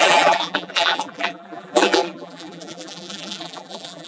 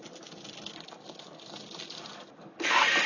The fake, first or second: first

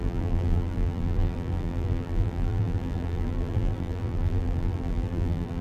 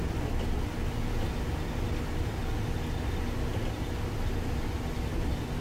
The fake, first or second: first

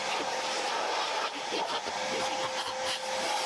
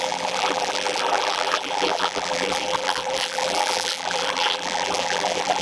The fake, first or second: second